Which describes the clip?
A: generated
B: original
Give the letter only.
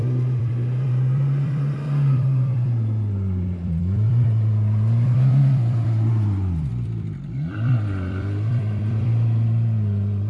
A